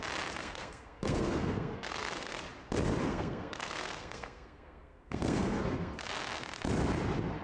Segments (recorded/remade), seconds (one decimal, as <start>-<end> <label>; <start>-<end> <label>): 0.0-0.4 recorded; 0.4-2.4 remade; 2.4-3.1 recorded; 3.1-6.0 remade; 6.0-7.4 recorded